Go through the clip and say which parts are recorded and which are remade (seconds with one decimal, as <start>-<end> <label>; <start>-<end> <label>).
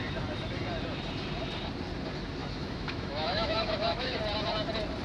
0.0-2.4 recorded; 2.4-4.2 remade; 4.2-5.0 recorded